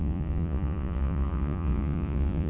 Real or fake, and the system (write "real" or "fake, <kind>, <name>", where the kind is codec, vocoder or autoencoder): fake, vocoder, Vocos